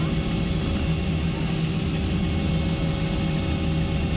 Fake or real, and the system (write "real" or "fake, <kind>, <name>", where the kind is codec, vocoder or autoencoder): real